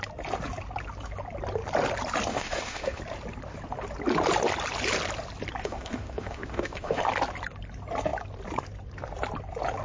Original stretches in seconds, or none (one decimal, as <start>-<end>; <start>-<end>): 0.0-2.3; 3.0-5.6; 7.0-9.8